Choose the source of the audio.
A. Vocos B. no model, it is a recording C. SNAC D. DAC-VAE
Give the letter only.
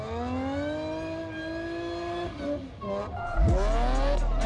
B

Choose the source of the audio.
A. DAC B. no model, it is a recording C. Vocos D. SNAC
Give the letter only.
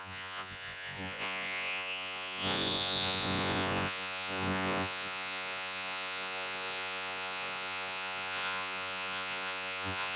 C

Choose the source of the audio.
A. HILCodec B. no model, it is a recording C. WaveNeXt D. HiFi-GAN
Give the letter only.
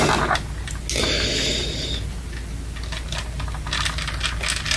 B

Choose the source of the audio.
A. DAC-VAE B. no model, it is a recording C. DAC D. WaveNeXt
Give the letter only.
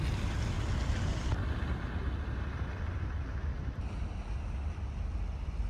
B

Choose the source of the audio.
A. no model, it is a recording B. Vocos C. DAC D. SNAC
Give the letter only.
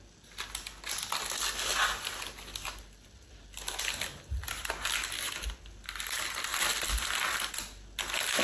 A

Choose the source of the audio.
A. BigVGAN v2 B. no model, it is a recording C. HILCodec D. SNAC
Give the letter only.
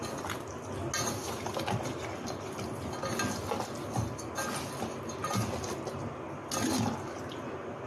B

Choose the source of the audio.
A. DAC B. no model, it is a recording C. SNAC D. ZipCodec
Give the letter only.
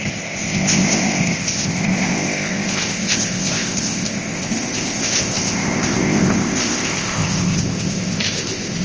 D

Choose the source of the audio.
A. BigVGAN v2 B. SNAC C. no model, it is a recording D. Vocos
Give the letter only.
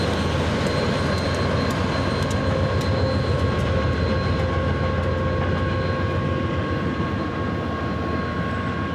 C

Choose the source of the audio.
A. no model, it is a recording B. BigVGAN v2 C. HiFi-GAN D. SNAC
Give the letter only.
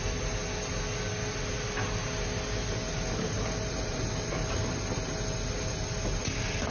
A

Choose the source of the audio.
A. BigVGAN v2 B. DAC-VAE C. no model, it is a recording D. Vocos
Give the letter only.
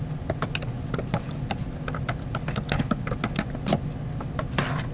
C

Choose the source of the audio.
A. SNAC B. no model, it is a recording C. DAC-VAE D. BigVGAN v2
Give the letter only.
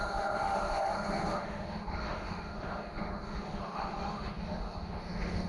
C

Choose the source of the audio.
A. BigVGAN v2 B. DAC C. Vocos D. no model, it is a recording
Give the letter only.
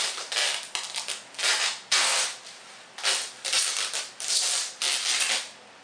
D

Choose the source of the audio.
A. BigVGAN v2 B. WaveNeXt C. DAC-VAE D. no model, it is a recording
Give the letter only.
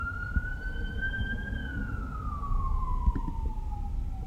A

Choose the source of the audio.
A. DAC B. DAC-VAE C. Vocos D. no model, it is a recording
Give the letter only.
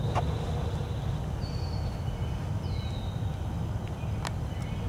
D